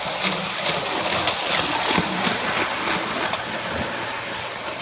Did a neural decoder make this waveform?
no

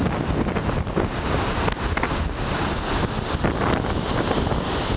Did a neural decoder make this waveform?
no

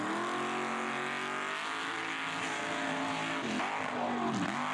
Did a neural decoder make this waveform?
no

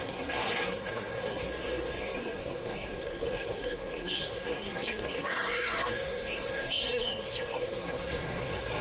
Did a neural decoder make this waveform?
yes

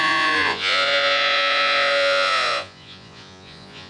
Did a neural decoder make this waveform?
yes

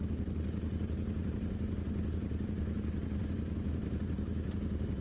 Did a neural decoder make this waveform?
yes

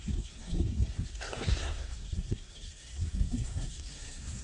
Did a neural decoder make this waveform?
yes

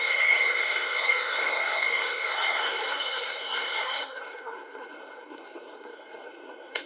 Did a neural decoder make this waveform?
yes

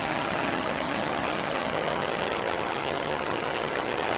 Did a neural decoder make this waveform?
yes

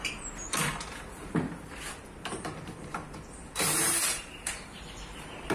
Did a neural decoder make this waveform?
yes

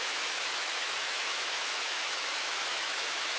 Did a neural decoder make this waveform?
yes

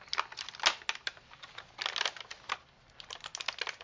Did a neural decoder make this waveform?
no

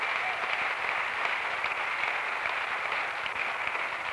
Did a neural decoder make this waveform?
no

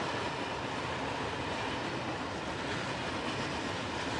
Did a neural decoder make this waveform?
no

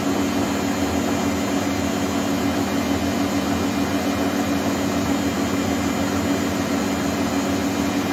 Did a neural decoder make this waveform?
no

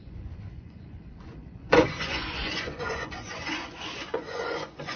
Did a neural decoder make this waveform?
yes